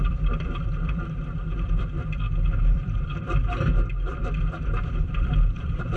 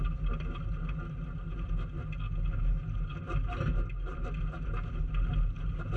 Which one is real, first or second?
second